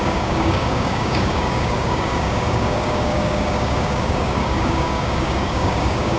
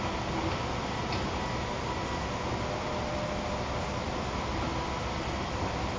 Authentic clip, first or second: second